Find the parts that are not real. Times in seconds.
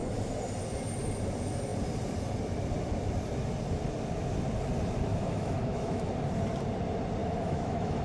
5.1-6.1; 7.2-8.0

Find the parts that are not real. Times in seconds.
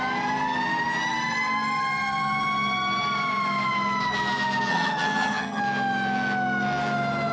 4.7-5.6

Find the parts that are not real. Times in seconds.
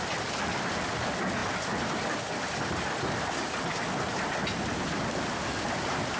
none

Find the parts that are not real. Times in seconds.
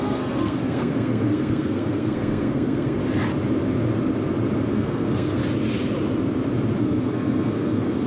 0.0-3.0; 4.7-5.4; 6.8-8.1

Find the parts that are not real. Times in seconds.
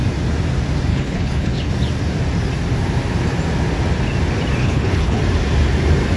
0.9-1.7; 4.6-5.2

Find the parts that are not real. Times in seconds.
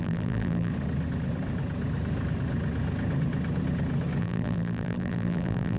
0.0-0.7; 4.2-5.8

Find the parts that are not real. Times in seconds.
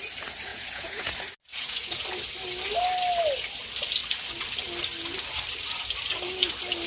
0.5-1.1; 1.5-2.0